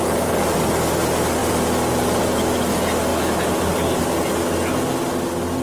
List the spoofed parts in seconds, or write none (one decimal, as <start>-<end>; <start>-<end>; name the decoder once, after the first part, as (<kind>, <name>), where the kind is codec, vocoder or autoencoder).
none